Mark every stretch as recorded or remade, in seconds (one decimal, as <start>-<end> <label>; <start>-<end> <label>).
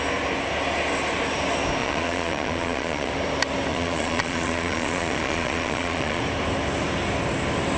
0.0-1.8 recorded; 1.8-3.1 remade; 3.1-3.7 recorded; 3.7-6.2 remade; 6.2-7.8 recorded